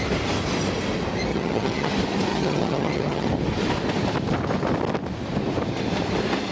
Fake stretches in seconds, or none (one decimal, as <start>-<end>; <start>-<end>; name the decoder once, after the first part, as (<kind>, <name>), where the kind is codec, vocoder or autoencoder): 1.3-1.9 (vocoder, HiFi-GAN); 2.3-3.3